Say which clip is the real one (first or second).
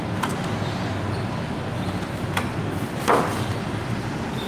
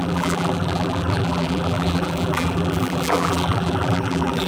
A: first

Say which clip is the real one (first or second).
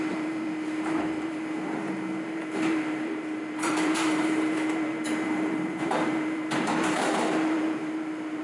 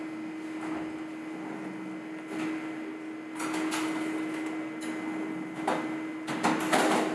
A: second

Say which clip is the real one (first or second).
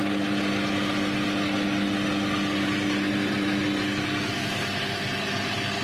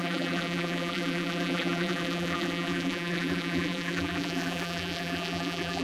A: first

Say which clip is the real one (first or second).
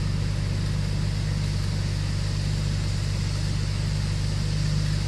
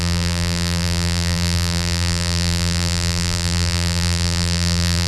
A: first